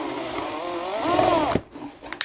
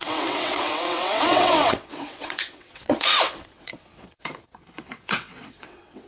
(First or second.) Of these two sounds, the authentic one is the first